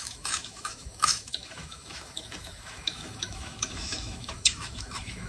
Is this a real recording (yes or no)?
no